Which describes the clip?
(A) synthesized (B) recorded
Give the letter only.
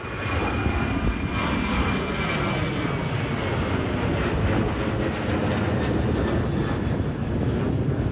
B